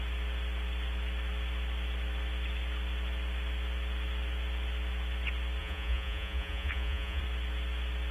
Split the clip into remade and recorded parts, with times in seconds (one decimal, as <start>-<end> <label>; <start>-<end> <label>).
0.0-5.6 recorded; 5.6-7.2 remade; 7.2-8.1 recorded